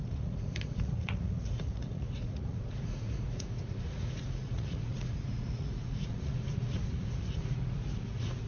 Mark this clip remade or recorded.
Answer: remade